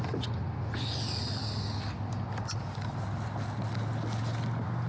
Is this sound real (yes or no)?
yes